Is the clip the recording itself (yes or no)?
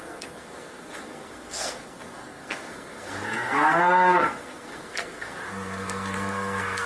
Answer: no